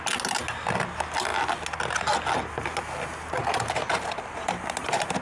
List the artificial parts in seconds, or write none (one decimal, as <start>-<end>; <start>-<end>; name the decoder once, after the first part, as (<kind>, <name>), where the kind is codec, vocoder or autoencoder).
none